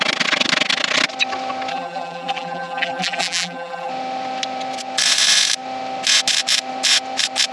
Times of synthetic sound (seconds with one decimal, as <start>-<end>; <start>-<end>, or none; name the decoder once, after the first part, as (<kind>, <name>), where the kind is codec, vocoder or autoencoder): 1.7-3.9 (vocoder, BigVGAN v2)